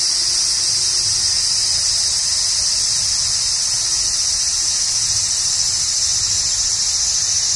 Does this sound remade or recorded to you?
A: recorded